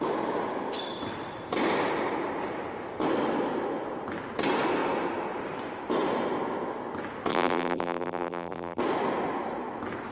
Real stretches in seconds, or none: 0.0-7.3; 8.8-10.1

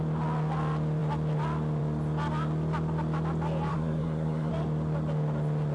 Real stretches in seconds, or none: 0.0-3.7; 4.5-5.7

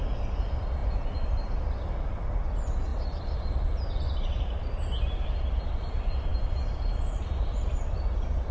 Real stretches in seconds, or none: 0.0-8.5